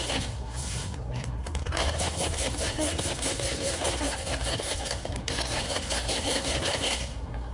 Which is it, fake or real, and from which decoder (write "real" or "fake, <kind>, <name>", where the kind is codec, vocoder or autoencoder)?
fake, codec, SNAC